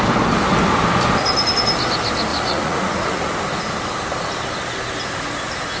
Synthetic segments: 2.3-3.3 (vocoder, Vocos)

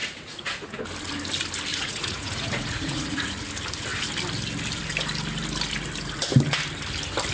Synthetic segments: 0.0-0.8 (vocoder, Vocos); 1.7-3.4

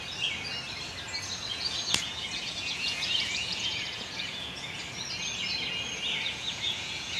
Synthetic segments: 1.5-4.8 (vocoder, Vocos); 6.3-7.2